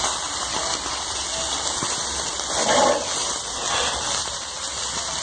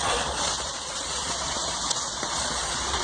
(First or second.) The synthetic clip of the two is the second